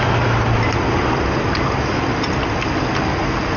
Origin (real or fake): real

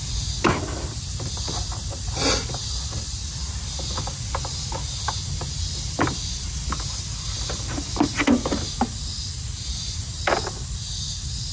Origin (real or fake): real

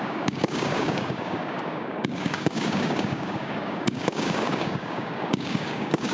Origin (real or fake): fake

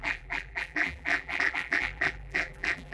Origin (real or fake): fake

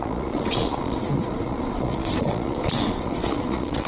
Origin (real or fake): fake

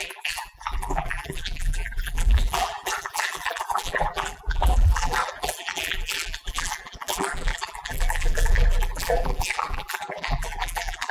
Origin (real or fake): fake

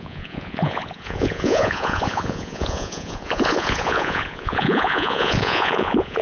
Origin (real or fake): fake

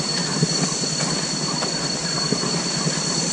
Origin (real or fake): real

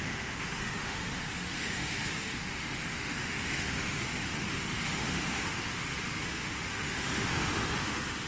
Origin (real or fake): fake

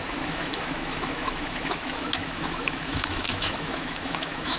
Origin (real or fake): fake